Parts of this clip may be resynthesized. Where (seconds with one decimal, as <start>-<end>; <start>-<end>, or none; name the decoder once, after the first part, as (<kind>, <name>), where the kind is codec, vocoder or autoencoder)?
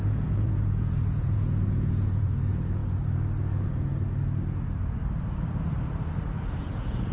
0.0-2.8 (vocoder, Vocos); 6.6-7.1